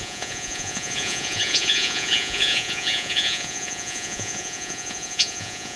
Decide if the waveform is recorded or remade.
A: remade